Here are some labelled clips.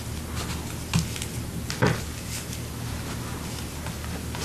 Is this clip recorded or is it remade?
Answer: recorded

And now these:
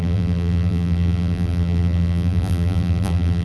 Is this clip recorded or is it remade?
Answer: remade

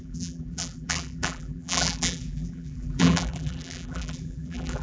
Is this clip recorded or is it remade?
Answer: remade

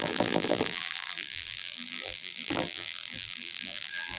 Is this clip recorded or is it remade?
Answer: remade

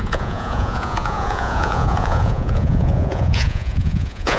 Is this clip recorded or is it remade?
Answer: remade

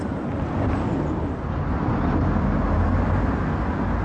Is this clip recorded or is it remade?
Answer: recorded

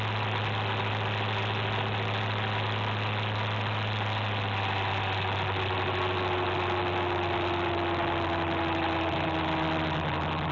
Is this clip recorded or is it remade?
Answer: recorded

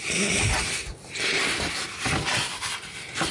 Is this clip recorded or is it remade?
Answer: recorded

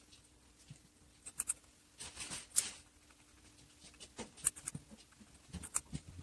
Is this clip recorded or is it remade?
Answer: recorded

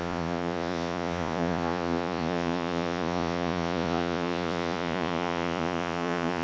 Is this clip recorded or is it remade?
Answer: remade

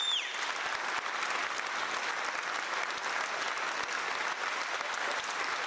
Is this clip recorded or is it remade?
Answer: recorded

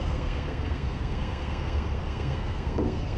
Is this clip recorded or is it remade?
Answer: remade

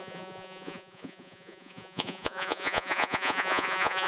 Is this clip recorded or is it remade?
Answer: remade